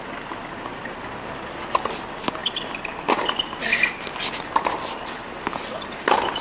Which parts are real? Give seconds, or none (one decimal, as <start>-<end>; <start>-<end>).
0.0-6.4